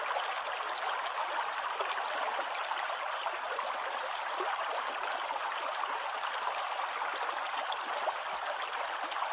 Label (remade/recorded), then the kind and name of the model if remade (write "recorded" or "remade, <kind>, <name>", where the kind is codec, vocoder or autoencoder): recorded